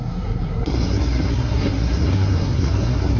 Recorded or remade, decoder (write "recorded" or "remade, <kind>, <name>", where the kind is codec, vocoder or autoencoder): remade, codec, SNAC